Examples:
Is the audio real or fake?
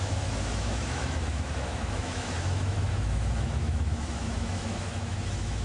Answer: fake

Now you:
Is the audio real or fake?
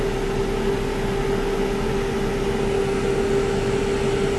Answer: real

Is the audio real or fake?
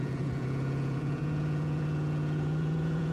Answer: fake